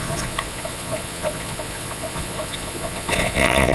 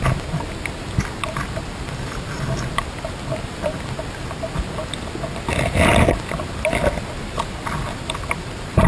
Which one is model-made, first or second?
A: first